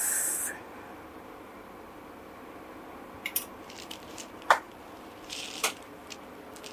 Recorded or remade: remade